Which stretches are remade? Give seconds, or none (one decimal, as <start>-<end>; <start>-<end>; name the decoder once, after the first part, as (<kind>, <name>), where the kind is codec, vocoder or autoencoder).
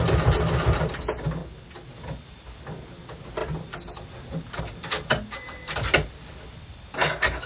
none